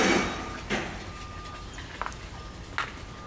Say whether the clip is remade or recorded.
recorded